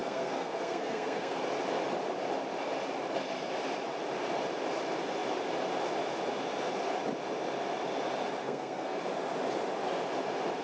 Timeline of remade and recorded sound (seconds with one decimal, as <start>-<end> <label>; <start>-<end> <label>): 0.0-1.4 remade; 1.4-8.4 recorded; 8.4-9.0 remade; 9.0-10.6 recorded